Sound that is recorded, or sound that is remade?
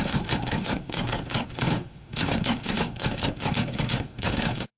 remade